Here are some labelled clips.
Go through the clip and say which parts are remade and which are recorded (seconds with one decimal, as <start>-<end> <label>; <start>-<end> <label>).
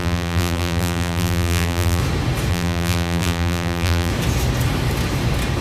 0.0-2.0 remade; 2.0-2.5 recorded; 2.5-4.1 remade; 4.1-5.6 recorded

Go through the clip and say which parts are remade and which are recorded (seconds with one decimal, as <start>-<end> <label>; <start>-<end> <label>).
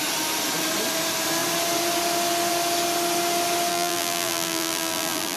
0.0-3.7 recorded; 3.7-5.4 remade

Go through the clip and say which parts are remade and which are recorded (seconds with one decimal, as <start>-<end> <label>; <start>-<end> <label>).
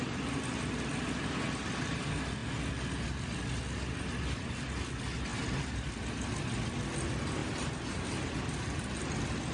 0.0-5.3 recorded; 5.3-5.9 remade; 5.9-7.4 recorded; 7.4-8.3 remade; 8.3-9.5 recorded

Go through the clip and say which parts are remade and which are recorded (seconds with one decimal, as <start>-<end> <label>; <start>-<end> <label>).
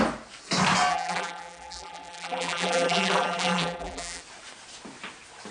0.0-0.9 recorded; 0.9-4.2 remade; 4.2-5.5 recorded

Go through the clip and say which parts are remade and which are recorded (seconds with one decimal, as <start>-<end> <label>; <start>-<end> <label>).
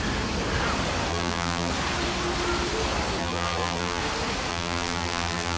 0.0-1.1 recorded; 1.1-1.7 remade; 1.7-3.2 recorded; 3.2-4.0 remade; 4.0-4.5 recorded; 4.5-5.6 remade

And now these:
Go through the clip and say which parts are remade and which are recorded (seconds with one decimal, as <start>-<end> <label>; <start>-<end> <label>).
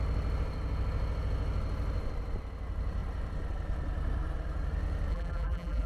0.0-5.1 recorded; 5.1-5.9 remade